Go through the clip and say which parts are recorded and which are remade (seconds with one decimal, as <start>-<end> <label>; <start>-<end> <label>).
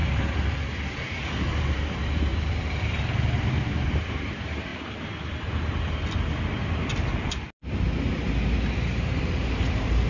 0.0-1.2 recorded; 1.2-4.7 remade; 4.7-9.2 recorded; 9.2-10.1 remade